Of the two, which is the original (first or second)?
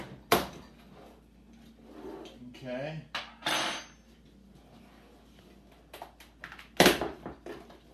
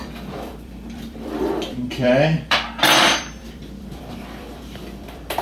first